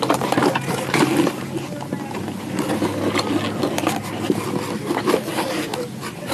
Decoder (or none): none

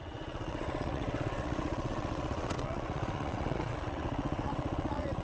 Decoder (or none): vocoder, WaveNeXt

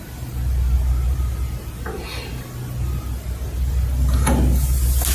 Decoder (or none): none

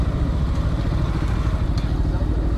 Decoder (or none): none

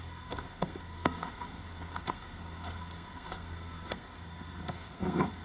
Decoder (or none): codec, SNAC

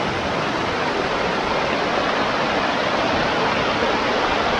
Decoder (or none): none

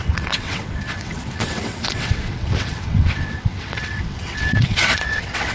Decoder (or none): vocoder, WaveNeXt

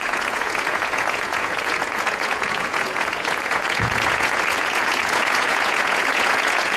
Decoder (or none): vocoder, Vocos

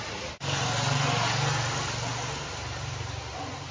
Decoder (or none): none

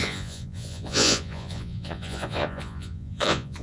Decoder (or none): vocoder, Vocos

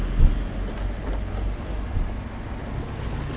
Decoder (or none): none